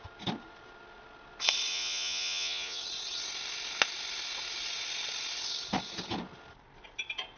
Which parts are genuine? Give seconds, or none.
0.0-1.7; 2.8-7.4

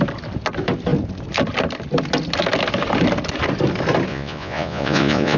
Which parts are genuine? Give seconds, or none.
0.0-4.1

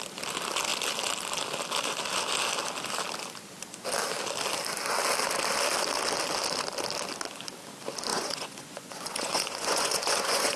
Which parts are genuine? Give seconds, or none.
0.0-8.1